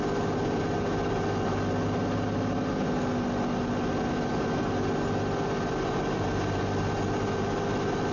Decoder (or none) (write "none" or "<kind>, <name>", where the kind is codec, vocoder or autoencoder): none